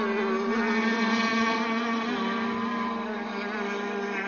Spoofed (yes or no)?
no